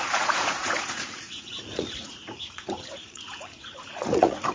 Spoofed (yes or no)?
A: yes